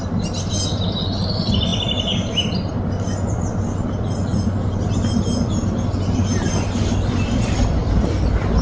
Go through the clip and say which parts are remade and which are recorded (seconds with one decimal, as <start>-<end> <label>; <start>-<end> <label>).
0.0-8.6 recorded